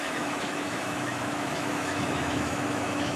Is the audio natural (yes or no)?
no